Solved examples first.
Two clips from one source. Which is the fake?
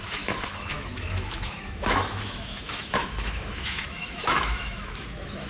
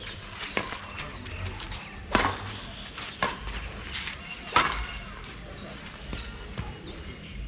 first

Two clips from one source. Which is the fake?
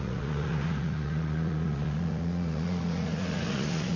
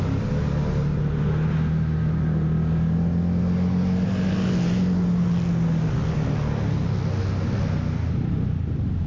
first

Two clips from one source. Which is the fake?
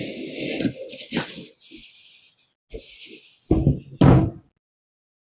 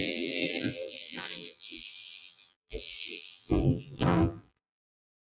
second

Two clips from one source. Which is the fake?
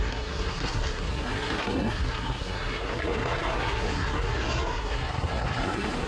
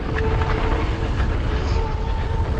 first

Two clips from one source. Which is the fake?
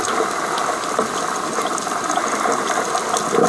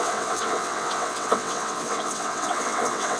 second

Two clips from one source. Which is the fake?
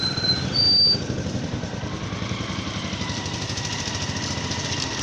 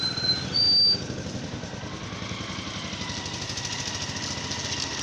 first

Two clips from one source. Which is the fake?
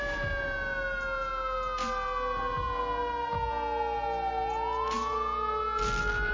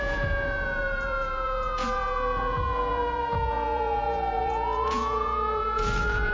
second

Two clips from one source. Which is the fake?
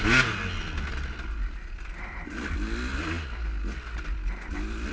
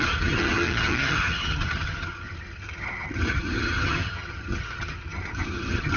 second